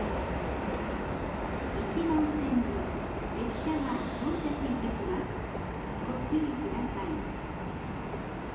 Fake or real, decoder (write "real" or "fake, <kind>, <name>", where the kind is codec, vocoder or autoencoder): real